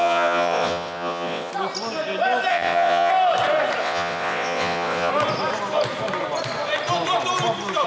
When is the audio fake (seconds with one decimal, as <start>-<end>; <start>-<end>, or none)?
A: 0.0-1.5; 2.5-3.1; 3.8-5.1